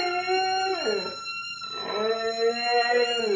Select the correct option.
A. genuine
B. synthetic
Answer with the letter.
A